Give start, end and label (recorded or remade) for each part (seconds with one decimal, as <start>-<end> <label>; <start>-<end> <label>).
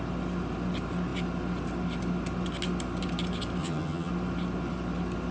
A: 0.0-3.6 recorded; 3.6-4.1 remade; 4.1-5.3 recorded